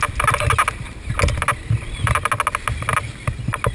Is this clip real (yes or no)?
yes